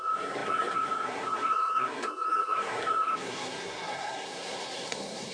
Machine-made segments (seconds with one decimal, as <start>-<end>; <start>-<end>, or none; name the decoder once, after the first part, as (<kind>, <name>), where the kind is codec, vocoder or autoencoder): 0.0-5.3 (codec, SNAC)